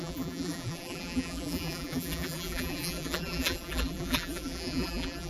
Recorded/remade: remade